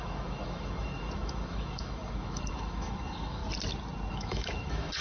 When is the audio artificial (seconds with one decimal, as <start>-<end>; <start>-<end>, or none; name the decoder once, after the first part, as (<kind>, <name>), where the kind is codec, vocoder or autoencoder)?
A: 0.0-3.4 (autoencoder, DAC-VAE); 4.1-5.0